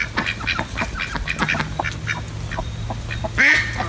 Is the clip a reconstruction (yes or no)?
no